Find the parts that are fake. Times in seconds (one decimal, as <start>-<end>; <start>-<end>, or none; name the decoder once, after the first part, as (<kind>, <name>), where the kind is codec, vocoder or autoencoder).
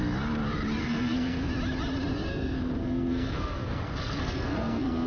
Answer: 0.8-1.5 (codec, SNAC); 2.3-5.1